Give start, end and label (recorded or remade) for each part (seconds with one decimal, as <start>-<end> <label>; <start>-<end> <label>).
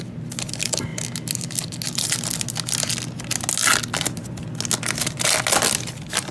0.0-6.3 recorded